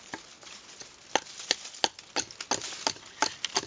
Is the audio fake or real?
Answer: real